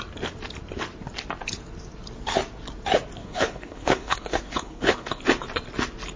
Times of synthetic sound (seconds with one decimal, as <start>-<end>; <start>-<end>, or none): 3.2-5.2